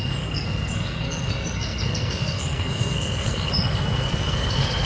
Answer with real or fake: fake